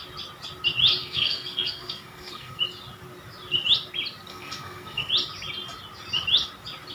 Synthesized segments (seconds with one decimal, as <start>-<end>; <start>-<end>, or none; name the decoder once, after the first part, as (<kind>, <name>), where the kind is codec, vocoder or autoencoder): 1.0-2.6 (codec, SNAC); 4.3-5.1